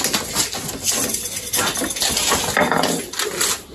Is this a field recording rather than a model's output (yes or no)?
yes